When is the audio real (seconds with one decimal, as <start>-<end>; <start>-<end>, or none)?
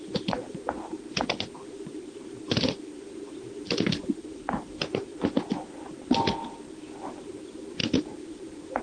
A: 2.9-4.1; 5.1-6.6